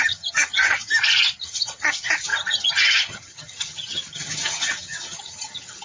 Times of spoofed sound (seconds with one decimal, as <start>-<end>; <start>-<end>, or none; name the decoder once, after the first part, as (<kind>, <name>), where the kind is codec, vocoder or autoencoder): 0.0-0.8 (vocoder, HiFi-GAN); 1.4-5.8

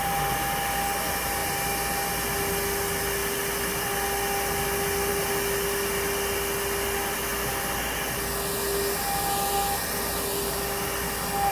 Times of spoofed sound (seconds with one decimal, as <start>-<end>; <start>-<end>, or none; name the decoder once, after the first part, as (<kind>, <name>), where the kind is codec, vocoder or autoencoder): none

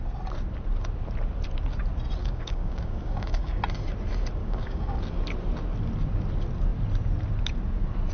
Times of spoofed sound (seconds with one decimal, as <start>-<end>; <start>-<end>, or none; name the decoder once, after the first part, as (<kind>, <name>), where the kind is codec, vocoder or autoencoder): 2.2-3.6 (codec, DAC); 4.4-5.0

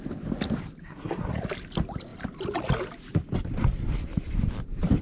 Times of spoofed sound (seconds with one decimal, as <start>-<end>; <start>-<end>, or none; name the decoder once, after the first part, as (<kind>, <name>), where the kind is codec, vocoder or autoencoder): 0.8-1.3 (codec, SNAC)